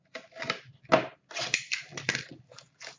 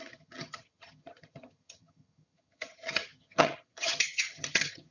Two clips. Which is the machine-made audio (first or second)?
second